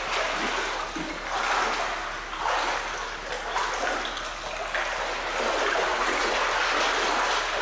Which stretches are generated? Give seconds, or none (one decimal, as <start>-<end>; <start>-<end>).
5.9-6.4